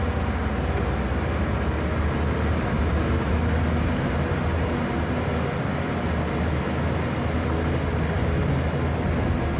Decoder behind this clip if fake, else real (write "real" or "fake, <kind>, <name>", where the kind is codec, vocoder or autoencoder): real